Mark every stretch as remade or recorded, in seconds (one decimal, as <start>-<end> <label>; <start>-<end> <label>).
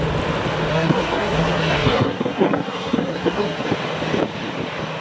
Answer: 0.0-0.7 recorded; 0.7-3.7 remade; 3.7-5.0 recorded